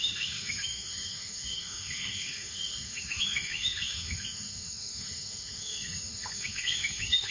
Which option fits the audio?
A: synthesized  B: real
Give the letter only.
A